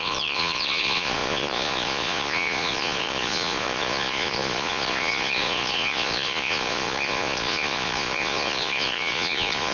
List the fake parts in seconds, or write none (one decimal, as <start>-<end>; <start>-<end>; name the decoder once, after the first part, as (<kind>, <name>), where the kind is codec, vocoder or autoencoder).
0.0-9.7 (vocoder, Vocos)

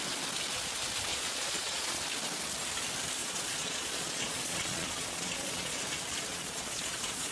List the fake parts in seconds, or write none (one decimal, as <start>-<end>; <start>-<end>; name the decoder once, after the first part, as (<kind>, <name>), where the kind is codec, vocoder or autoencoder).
1.1-2.0 (vocoder, Vocos); 3.2-5.8; 6.3-7.3